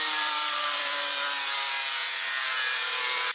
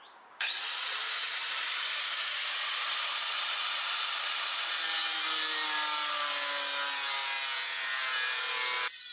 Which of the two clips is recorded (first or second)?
second